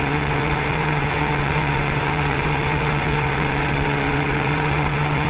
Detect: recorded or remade remade